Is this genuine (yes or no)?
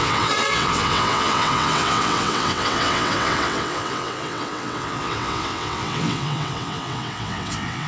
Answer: no